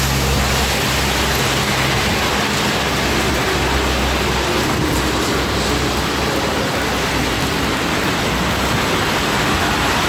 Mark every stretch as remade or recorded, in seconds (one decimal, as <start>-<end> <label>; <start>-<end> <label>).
0.0-10.1 recorded